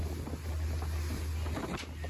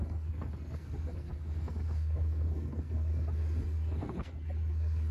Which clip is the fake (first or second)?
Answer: second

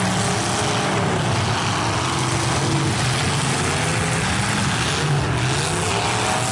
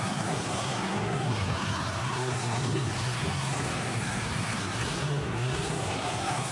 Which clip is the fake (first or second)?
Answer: second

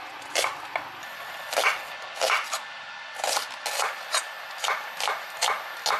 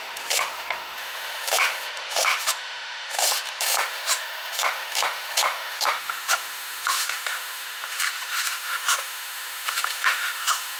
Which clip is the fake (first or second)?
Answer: second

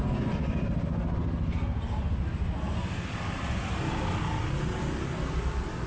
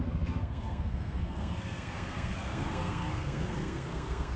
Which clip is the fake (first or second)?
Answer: second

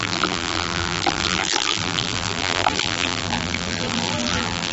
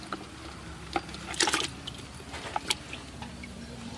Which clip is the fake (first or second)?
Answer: first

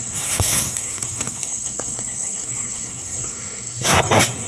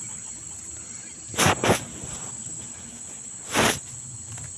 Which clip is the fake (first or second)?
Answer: first